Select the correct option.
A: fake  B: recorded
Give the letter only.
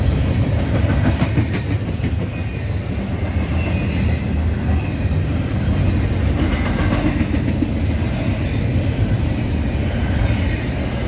B